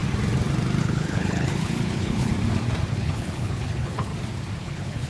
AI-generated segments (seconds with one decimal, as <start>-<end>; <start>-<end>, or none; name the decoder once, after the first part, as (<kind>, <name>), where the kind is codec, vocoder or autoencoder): 0.8-2.3 (codec, HILCodec); 2.9-4.1; 4.6-5.1